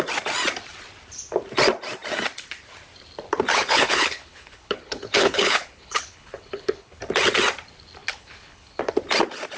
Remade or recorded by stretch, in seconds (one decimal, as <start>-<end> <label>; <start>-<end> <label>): 0.0-3.5 recorded; 3.5-7.0 remade; 7.0-8.0 recorded; 8.0-8.8 remade; 8.8-9.6 recorded